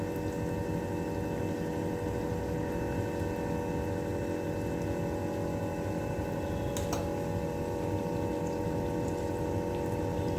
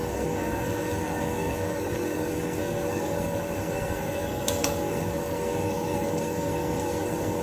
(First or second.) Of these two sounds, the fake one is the second